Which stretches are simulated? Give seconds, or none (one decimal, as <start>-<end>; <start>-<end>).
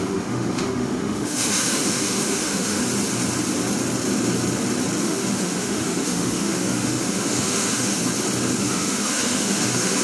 0.0-2.8; 5.0-8.0; 8.6-10.0